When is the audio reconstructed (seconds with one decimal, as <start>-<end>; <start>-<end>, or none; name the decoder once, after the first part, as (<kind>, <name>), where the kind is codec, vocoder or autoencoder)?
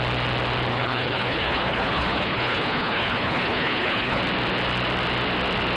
0.7-4.2 (codec, HILCodec)